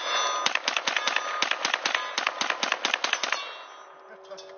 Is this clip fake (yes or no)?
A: no